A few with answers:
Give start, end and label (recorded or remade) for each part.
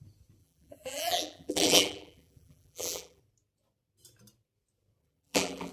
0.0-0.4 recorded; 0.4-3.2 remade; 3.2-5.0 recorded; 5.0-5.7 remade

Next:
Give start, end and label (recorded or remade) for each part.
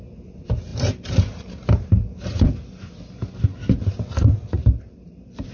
0.0-0.7 recorded; 0.7-2.9 remade; 2.9-4.6 recorded; 4.6-5.5 remade